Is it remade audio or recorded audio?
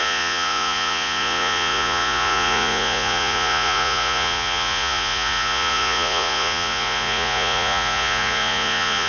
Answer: remade